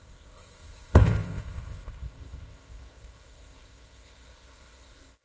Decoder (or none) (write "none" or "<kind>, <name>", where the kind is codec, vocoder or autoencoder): codec, ZipCodec